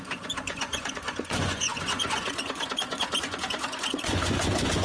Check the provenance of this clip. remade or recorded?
remade